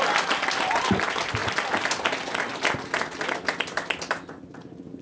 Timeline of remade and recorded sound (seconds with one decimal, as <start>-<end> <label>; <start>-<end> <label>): 0.0-5.0 recorded